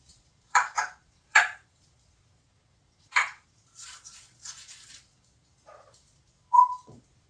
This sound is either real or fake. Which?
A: fake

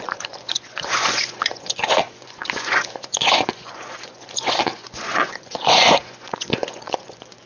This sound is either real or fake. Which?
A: fake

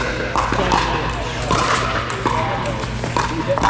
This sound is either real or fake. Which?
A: real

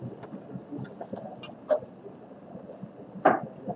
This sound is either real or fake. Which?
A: real